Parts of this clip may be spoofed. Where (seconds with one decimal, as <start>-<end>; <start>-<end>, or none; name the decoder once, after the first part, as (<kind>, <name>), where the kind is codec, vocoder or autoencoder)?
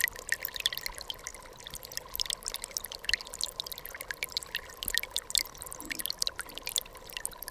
none